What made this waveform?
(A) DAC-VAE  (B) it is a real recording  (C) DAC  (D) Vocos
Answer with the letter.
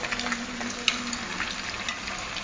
B